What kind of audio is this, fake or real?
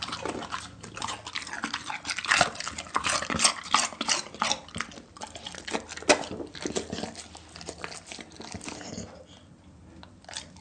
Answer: real